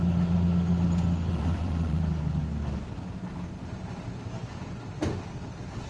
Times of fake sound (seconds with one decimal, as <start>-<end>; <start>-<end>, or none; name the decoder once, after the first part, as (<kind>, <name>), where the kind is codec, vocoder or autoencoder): 1.3-2.0 (vocoder, WaveNeXt)

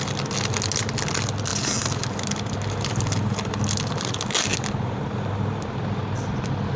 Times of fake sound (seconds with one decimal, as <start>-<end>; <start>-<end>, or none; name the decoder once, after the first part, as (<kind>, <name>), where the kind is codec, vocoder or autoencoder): none